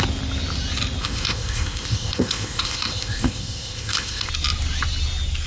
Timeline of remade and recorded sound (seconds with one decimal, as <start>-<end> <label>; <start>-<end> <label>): 0.0-1.0 recorded; 1.0-4.3 remade; 4.3-5.5 recorded